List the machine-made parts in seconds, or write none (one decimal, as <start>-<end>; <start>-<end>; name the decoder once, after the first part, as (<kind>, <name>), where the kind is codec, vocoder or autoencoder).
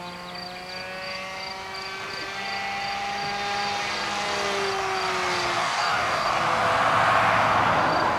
5.6-6.3 (codec, DAC)